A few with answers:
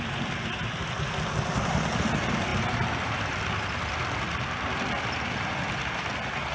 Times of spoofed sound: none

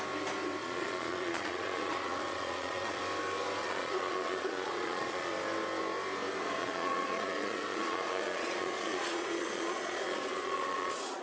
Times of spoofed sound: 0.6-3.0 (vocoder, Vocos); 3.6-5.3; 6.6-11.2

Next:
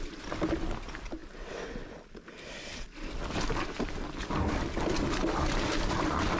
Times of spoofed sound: none